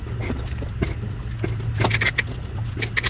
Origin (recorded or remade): recorded